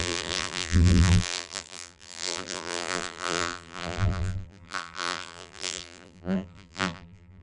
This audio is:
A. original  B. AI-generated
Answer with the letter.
B